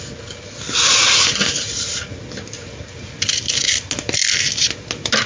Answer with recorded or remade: recorded